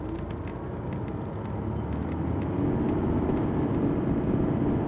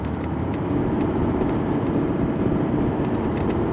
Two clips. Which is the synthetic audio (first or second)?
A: second